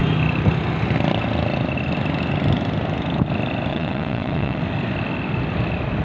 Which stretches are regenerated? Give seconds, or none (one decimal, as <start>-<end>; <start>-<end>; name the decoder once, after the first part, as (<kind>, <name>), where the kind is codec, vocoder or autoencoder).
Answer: 3.7-4.6 (vocoder, WaveNeXt)